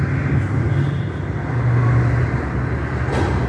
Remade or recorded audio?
recorded